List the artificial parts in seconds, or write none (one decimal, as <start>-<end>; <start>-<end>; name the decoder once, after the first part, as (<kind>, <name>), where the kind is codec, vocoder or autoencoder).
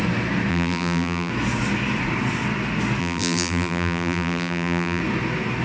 0.5-1.3 (vocoder, BigVGAN v2); 3.0-5.0